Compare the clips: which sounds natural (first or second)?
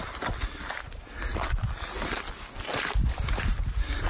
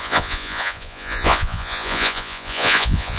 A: first